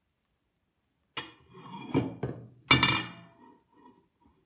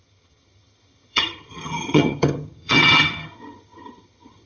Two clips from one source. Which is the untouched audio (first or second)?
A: first